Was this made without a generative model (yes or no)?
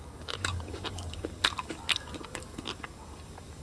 no